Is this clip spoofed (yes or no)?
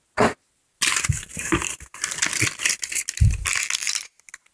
no